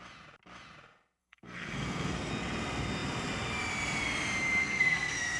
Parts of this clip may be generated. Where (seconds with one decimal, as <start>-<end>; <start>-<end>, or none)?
1.2-2.3; 4.6-5.4